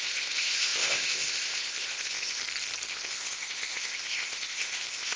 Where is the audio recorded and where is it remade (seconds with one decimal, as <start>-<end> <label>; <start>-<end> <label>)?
0.0-2.4 remade; 2.4-2.9 recorded; 2.9-5.2 remade